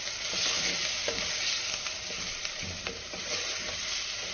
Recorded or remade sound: recorded